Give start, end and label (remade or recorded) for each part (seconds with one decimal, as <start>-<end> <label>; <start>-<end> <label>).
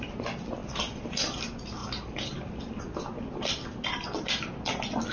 0.0-5.1 recorded